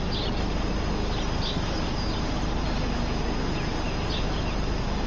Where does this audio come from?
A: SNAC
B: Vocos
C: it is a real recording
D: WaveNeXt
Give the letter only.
C